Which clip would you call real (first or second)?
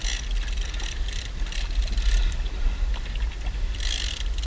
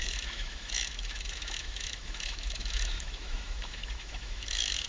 first